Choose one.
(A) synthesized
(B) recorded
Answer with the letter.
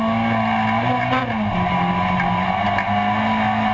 B